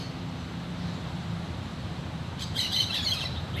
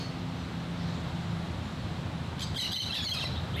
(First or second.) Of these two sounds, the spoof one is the first